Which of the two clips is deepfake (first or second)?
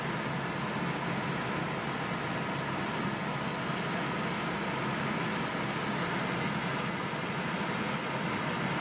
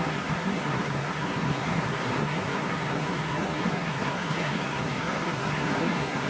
second